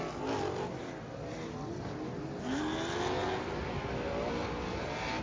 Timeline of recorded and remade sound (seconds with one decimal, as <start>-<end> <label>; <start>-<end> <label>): 0.0-5.2 recorded